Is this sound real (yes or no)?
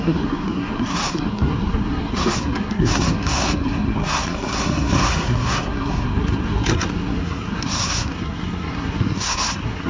no